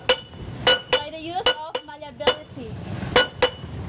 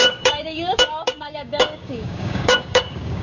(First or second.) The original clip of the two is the first